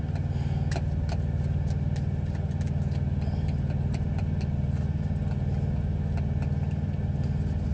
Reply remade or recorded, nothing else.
recorded